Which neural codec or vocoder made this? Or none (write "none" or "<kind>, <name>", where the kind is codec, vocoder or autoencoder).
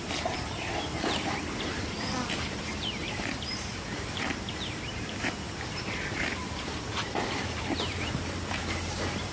vocoder, BigVGAN v2